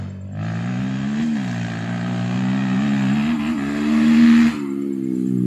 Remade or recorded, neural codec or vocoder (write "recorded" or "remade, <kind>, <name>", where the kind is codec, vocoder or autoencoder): recorded